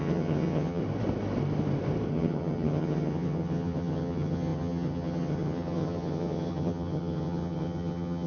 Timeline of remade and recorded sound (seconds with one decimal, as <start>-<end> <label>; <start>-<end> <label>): 0.0-0.8 remade; 0.8-2.1 recorded; 2.1-8.3 remade